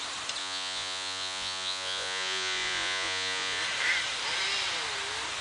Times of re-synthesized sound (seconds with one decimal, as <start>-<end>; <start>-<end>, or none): 0.4-3.6